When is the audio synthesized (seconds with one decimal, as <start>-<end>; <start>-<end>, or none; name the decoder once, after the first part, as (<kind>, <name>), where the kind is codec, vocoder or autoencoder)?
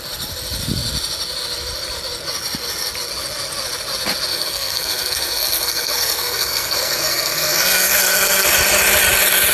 4.3-8.5 (codec, SNAC)